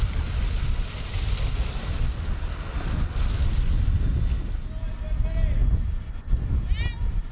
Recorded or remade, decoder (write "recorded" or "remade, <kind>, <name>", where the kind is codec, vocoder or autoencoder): recorded